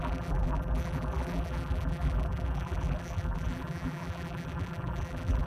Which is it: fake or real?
fake